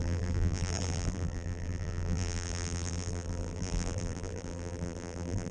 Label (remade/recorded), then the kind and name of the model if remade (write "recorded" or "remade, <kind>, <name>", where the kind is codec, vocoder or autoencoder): remade, vocoder, BigVGAN v2